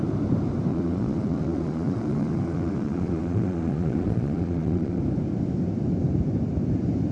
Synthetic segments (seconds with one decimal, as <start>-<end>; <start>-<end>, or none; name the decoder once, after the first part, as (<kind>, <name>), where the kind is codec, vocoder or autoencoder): 0.7-5.0 (vocoder, Vocos)